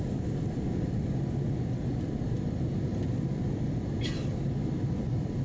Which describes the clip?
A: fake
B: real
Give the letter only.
B